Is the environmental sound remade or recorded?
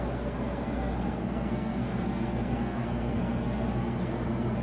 remade